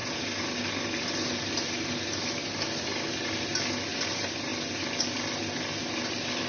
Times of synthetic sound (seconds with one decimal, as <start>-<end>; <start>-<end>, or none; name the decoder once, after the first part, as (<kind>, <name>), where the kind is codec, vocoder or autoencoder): none